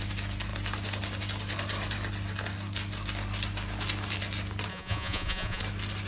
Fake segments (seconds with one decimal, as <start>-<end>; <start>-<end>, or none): 4.7-5.6